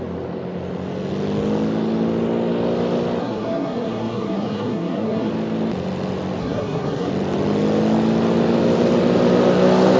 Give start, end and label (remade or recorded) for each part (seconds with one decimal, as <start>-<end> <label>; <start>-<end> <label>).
0.0-3.2 recorded; 3.2-5.3 remade; 5.3-6.4 recorded; 6.4-7.1 remade; 7.1-10.0 recorded